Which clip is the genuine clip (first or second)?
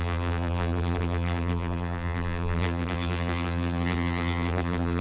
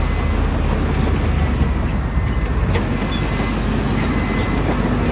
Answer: second